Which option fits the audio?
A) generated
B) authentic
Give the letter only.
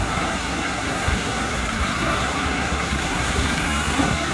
A